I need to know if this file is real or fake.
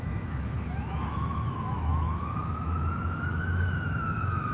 fake